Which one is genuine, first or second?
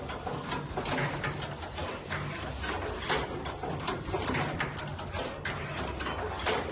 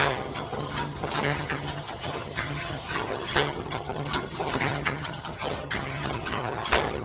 first